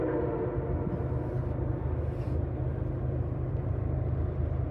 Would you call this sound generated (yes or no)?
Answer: no